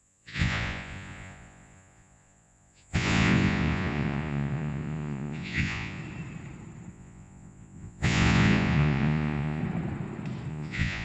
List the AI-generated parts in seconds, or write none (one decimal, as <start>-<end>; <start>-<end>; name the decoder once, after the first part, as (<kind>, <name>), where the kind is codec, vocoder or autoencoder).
0.0-6.0 (vocoder, Vocos); 6.9-9.6; 10.5-11.0